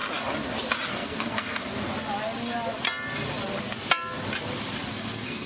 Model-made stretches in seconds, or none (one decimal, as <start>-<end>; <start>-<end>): 0.9-1.6; 4.9-5.5